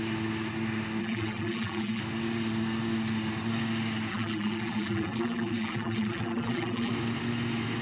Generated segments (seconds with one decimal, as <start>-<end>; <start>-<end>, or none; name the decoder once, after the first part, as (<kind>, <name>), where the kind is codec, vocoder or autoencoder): 1.0-2.0 (vocoder, BigVGAN v2); 4.1-6.9

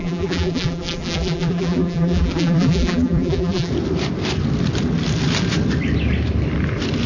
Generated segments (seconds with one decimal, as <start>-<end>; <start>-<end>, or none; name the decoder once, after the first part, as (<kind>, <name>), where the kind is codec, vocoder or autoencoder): 0.0-3.7 (vocoder, BigVGAN v2)

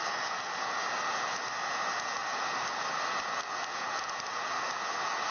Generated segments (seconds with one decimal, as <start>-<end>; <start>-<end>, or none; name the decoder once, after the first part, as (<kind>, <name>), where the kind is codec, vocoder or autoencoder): 2.2-2.8 (vocoder, BigVGAN v2)